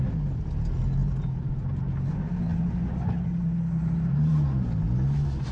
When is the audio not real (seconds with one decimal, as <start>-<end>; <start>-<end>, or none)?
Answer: 1.0-1.5